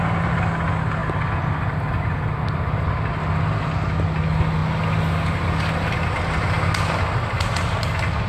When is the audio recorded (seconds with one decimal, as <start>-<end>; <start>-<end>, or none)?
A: 0.0-8.3